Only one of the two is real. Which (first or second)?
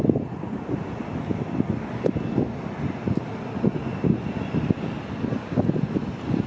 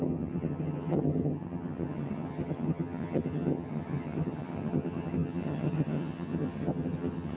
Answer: first